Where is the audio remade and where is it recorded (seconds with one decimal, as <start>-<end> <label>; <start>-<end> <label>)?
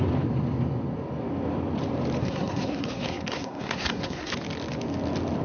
0.0-2.2 recorded; 2.2-4.3 remade; 4.3-5.4 recorded